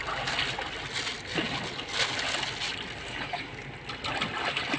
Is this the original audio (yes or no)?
yes